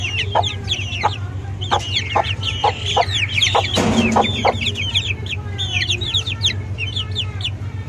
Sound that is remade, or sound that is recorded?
remade